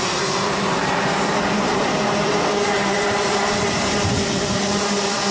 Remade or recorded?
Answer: remade